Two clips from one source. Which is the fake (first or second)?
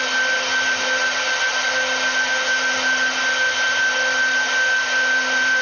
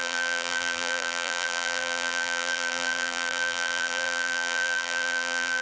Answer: second